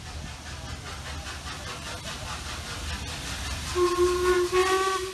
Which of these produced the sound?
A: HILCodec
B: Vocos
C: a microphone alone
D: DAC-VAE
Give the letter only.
C